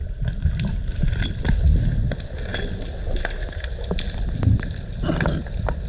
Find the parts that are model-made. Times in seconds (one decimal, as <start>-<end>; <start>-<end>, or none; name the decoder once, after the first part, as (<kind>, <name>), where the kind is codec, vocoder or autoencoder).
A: none